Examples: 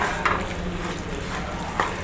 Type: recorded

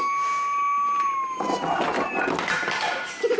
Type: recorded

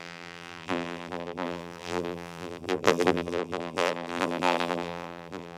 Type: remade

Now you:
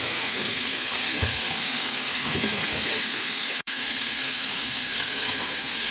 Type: remade